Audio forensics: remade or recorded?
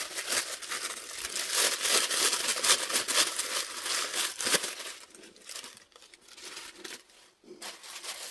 recorded